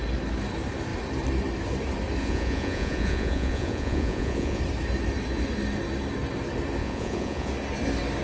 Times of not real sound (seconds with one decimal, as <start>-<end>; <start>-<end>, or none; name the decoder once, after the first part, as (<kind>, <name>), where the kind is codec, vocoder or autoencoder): 2.2-4.6 (vocoder, Vocos); 6.8-7.5